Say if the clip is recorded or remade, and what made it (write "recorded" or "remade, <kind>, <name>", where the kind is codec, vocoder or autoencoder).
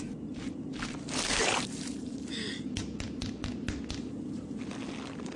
recorded